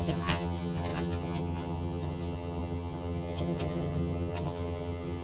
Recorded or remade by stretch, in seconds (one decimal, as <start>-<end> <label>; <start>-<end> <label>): 0.0-5.2 remade